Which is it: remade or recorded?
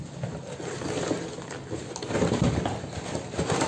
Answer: recorded